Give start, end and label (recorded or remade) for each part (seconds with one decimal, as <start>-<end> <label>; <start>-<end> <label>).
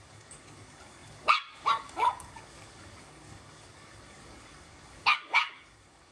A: 0.0-6.1 remade